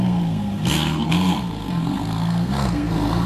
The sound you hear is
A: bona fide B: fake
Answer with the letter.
B